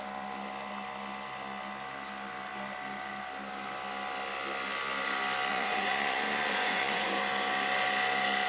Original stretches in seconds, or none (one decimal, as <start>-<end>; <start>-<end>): 0.0-5.5; 7.1-8.5